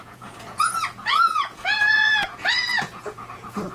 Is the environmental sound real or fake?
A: fake